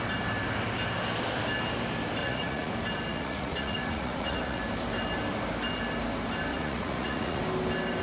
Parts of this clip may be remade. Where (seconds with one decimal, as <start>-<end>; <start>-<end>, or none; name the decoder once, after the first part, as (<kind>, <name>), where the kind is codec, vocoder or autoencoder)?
2.2-2.7 (vocoder, Vocos); 3.1-4.6; 6.5-7.4

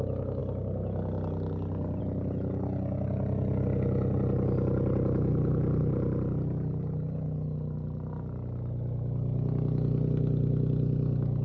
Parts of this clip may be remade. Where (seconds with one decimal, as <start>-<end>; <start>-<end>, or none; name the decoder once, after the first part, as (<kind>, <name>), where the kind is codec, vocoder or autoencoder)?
none

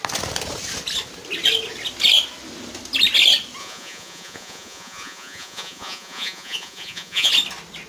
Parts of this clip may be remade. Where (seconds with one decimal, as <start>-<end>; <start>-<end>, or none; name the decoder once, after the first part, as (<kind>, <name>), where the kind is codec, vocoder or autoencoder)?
3.6-7.3 (vocoder, Vocos)

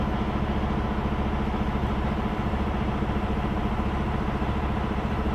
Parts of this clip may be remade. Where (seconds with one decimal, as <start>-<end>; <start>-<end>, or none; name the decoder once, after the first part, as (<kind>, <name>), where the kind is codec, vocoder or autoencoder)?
1.8-5.3 (vocoder, BigVGAN v2)